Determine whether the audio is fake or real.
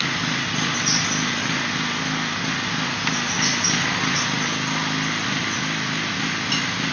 real